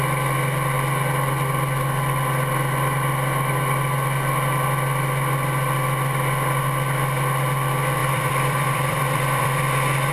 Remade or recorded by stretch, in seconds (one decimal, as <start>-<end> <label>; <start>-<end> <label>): 0.0-8.0 recorded; 8.0-10.1 remade